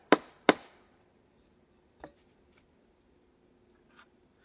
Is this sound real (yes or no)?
yes